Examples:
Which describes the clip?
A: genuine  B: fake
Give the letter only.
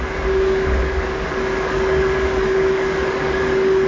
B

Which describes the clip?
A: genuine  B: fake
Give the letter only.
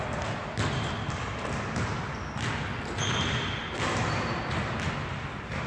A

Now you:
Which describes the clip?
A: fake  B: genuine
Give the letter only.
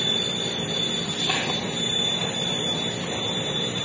B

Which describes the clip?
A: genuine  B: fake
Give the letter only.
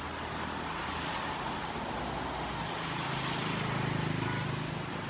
A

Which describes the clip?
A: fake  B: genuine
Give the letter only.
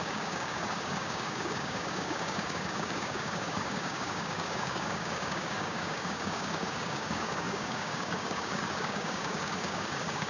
A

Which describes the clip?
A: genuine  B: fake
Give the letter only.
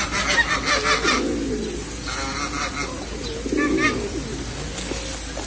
A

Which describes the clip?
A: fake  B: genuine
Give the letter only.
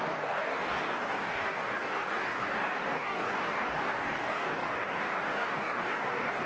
A